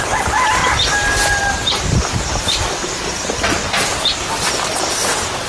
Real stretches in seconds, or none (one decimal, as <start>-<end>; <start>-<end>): 0.0-0.6; 3.9-5.5